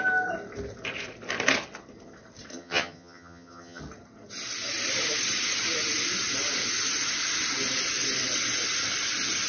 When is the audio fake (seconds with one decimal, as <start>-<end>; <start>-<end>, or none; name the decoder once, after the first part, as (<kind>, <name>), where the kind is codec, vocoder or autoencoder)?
2.5-3.8 (vocoder, HiFi-GAN)